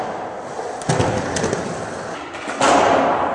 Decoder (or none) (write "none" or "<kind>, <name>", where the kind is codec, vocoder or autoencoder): none